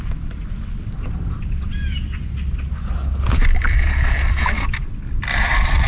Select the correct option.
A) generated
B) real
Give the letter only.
B